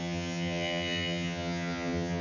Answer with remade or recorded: remade